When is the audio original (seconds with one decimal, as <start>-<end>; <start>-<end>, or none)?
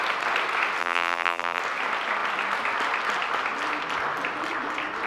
0.0-0.8; 1.6-5.1